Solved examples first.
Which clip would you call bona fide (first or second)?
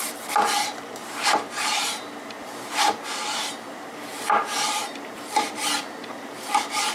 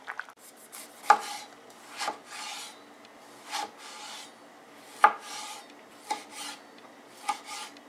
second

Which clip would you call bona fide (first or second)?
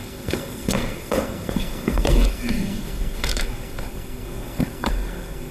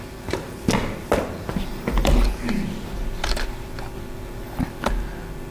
second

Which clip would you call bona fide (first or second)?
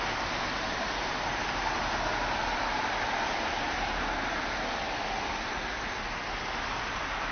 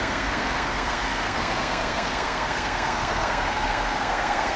first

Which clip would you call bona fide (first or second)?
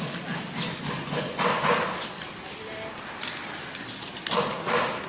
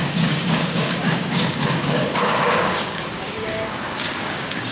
first